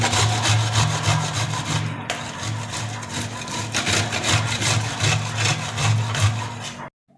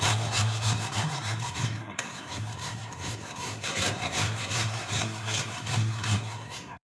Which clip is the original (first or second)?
first